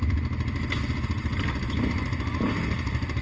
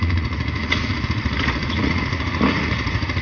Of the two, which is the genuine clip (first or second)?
first